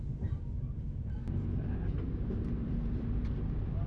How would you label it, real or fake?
fake